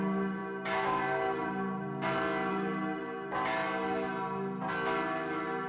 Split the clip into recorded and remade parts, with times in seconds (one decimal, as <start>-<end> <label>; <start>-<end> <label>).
0.0-5.7 recorded